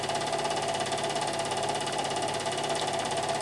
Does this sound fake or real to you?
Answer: real